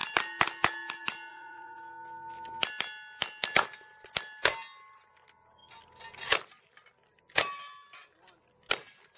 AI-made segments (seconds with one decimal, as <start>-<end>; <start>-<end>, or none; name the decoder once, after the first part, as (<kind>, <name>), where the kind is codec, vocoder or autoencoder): 1.3-1.8 (vocoder, Vocos)